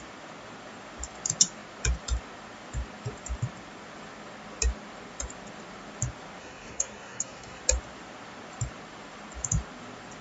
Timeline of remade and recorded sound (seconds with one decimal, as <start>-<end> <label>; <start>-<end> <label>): 0.0-6.4 recorded; 6.4-7.6 remade; 7.6-10.2 recorded